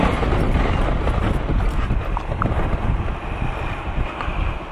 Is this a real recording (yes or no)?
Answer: yes